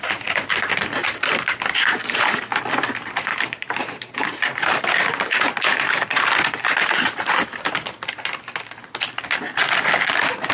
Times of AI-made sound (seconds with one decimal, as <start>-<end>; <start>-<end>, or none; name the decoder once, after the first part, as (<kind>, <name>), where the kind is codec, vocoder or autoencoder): 3.3-4.8 (vocoder, BigVGAN v2)